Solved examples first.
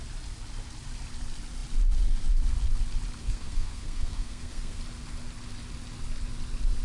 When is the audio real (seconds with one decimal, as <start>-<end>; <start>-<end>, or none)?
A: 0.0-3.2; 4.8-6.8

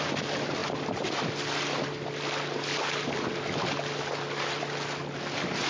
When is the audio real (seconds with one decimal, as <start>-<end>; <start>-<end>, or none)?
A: 0.0-5.7

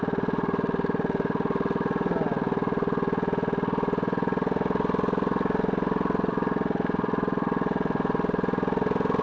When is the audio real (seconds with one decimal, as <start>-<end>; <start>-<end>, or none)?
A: 0.0-9.2